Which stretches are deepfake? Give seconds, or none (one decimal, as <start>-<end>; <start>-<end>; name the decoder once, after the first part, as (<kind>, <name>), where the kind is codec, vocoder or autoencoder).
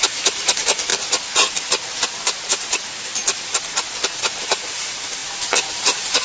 0.0-0.9 (vocoder, BigVGAN v2); 4.2-5.2; 5.8-6.2